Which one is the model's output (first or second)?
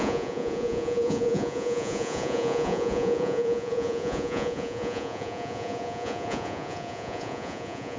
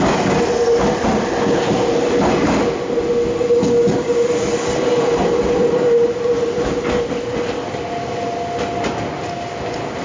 first